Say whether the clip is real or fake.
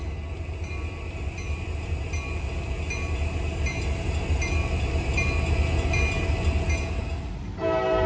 real